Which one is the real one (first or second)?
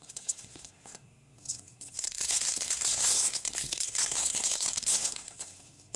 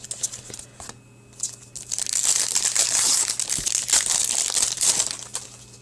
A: second